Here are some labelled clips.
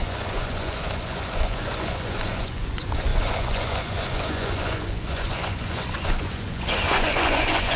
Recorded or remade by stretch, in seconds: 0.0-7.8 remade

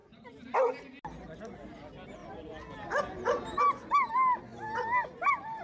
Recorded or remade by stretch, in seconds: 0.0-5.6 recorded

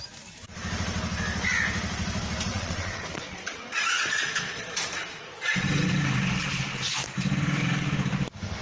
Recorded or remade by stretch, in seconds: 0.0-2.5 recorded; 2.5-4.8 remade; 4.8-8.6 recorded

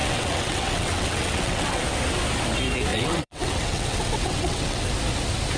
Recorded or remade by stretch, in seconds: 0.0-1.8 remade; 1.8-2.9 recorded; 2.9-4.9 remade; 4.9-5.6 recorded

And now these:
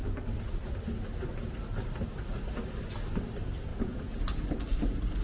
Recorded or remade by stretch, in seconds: 0.0-3.7 recorded; 3.7-4.4 remade; 4.4-5.2 recorded

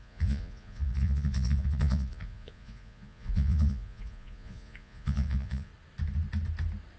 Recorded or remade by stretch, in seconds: 0.0-5.7 remade; 5.7-7.0 recorded